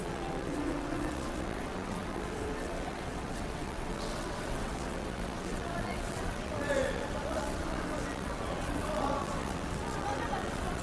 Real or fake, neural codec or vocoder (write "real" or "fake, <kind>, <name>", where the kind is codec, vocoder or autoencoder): fake, vocoder, WaveNeXt